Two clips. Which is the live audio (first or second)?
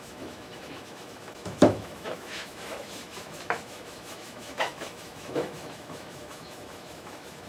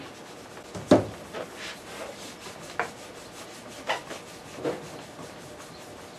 second